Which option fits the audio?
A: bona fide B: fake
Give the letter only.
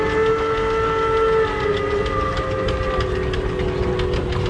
A